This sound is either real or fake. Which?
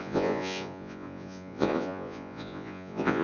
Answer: fake